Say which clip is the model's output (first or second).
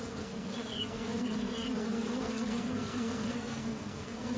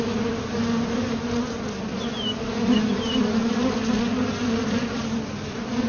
first